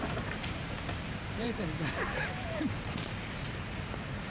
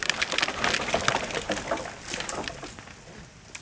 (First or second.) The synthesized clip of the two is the first